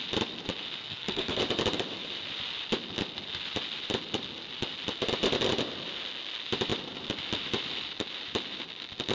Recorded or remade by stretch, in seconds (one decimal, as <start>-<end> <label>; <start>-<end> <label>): 0.0-0.8 recorded; 0.8-1.4 remade; 1.4-9.1 recorded